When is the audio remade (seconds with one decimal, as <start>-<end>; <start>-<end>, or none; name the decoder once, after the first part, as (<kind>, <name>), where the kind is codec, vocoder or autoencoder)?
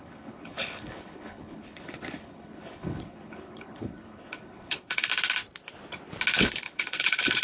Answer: 0.0-5.1 (codec, HILCodec); 6.4-7.4